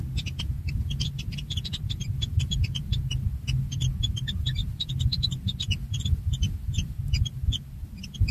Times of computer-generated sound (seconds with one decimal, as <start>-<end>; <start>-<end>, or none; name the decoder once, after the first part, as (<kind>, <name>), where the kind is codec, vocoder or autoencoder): 2.3-3.0 (vocoder, BigVGAN v2); 4.6-7.0